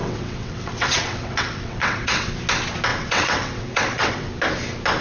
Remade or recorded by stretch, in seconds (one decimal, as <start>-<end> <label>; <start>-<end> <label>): 0.0-2.3 remade; 2.3-2.9 recorded; 2.9-4.3 remade; 4.3-5.0 recorded